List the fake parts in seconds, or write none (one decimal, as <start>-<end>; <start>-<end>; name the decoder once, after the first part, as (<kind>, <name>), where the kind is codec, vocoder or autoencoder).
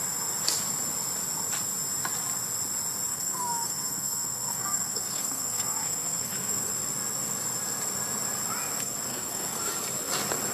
3.1-6.7 (codec, SNAC); 9.1-9.7